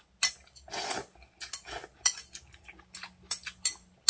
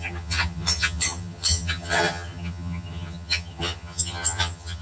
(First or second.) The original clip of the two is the first